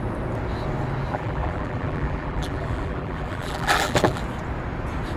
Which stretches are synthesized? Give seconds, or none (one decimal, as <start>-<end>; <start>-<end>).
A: 1.1-4.2